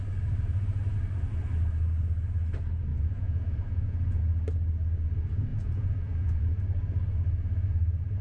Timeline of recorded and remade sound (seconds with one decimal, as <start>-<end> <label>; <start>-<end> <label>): 0.0-2.9 recorded; 2.9-4.2 remade; 4.2-5.5 recorded; 5.5-6.4 remade; 6.4-8.2 recorded